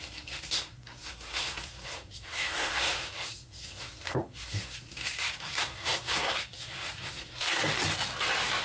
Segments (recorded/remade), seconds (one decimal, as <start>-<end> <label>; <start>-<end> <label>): 0.0-7.6 remade; 7.6-8.6 recorded